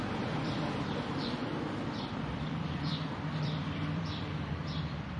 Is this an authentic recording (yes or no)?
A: no